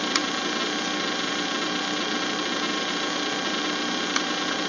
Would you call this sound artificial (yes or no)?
no